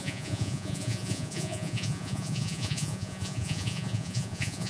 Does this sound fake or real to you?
fake